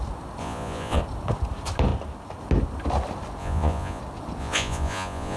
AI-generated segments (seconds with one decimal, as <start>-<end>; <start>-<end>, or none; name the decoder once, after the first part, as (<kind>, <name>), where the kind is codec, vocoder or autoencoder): 0.4-1.0 (vocoder, Vocos); 3.4-4.0; 4.4-5.4

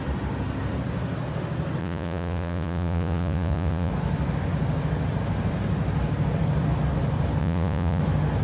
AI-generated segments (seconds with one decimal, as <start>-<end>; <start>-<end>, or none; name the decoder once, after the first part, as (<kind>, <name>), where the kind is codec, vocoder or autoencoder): 1.8-3.9 (vocoder, Vocos); 7.4-8.0

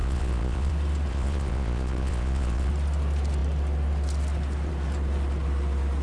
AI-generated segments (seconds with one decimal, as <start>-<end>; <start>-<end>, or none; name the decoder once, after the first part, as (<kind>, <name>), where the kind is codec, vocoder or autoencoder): 0.0-0.7 (vocoder, Vocos); 1.1-2.7